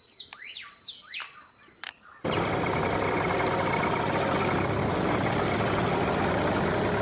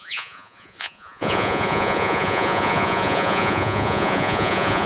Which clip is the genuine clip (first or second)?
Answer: first